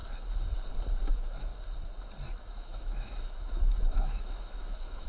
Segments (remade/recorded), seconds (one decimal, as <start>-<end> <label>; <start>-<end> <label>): 0.0-1.1 recorded; 1.1-1.5 remade; 1.5-2.3 recorded; 2.3-5.1 remade